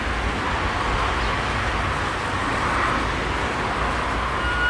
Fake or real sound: real